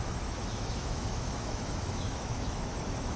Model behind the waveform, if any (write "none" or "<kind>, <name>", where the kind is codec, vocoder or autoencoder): autoencoder, DAC-VAE